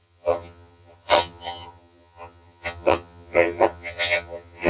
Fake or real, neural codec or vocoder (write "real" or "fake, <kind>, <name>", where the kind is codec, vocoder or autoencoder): fake, vocoder, HiFi-GAN